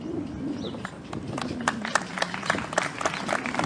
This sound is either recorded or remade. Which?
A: recorded